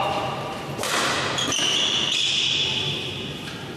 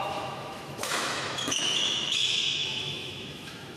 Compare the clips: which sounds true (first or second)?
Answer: first